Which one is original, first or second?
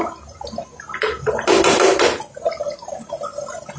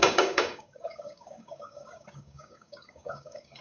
first